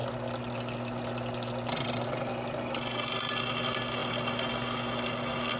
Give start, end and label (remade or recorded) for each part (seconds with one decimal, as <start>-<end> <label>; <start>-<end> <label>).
0.0-5.6 recorded